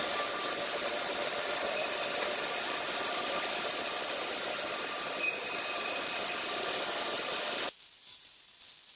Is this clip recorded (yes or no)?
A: yes